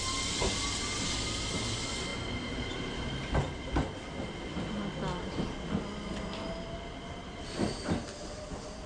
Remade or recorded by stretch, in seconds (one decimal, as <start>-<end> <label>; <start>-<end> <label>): 0.0-8.9 recorded